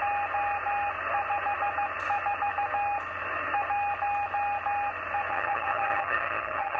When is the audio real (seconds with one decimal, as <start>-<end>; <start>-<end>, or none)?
0.0-5.3